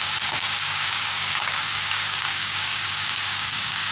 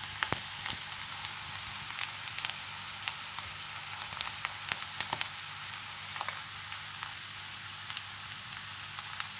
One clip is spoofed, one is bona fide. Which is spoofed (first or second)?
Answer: first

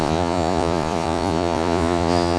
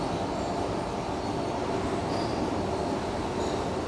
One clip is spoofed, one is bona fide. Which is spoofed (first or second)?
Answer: first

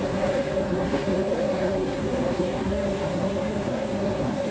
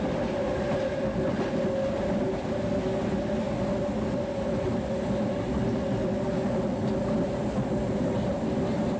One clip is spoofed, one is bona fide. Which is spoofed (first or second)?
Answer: first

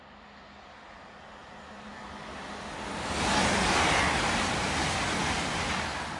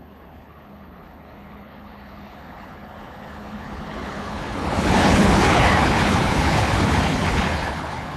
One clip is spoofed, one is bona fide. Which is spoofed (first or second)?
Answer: second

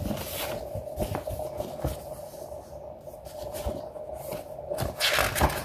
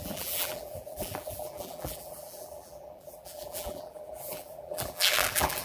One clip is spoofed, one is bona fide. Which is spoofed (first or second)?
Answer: second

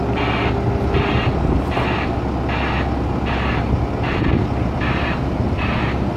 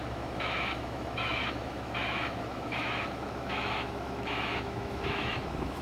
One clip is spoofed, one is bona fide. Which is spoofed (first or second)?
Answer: second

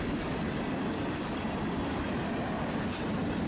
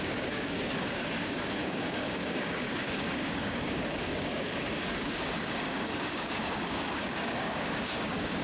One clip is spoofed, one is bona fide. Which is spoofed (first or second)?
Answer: second